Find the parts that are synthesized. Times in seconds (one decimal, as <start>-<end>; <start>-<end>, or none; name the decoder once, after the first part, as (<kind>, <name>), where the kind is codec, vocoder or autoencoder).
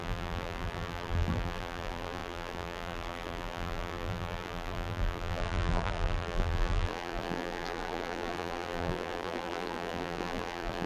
0.0-10.9 (vocoder, BigVGAN v2)